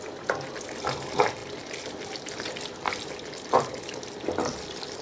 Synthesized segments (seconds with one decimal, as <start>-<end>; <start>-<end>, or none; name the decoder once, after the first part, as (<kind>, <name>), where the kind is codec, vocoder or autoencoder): none